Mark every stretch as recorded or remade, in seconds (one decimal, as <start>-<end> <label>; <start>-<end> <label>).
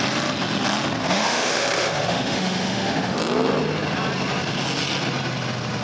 0.0-1.0 recorded; 1.0-3.2 remade; 3.2-5.8 recorded